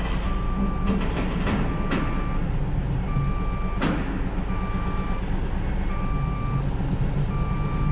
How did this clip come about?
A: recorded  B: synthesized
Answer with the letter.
A